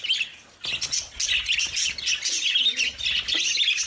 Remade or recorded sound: recorded